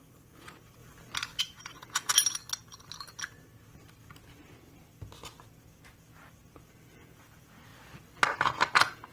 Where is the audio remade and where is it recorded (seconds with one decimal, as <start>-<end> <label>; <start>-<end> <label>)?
0.0-0.8 remade; 0.8-1.4 recorded; 1.4-2.1 remade; 2.1-6.9 recorded; 6.9-7.7 remade; 7.7-8.4 recorded; 8.4-9.1 remade